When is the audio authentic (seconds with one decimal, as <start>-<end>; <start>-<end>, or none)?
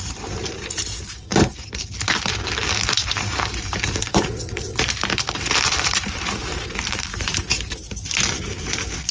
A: none